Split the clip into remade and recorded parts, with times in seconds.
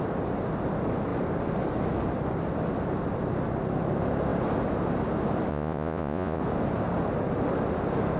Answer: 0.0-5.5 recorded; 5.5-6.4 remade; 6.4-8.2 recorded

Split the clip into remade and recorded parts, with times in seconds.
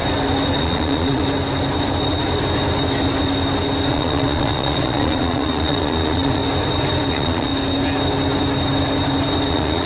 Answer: 0.0-0.6 recorded; 0.6-1.2 remade; 1.2-3.9 recorded; 3.9-6.4 remade; 6.4-7.1 recorded; 7.1-7.5 remade; 7.5-9.5 recorded; 9.5-9.9 remade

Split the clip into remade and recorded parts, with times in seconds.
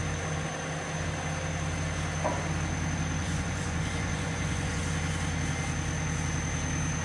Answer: 0.0-3.2 recorded; 3.2-4.8 remade; 4.8-7.0 recorded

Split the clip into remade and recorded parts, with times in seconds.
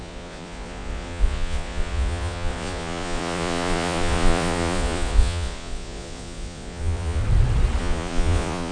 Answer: 0.0-7.2 remade; 7.2-7.8 recorded; 7.8-8.7 remade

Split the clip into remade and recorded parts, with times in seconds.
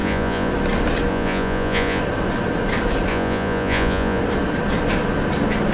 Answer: 0.0-0.5 remade; 0.5-1.1 recorded; 1.1-2.0 remade; 2.0-3.1 recorded; 3.1-4.2 remade; 4.2-5.7 recorded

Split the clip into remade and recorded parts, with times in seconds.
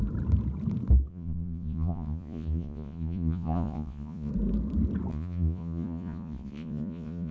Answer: 0.0-1.1 recorded; 1.1-4.3 remade; 4.3-5.1 recorded; 5.1-7.3 remade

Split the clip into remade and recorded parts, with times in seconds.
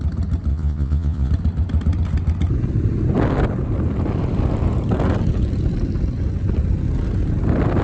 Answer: 0.0-0.5 recorded; 0.5-1.3 remade; 1.3-7.8 recorded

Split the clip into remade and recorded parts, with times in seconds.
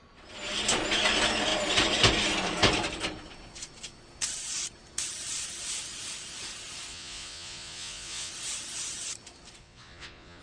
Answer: 0.0-6.9 recorded; 6.9-8.3 remade; 8.3-9.6 recorded; 9.6-10.4 remade